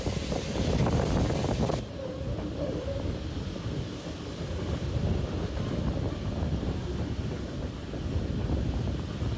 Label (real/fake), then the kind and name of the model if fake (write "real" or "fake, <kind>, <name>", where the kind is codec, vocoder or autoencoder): real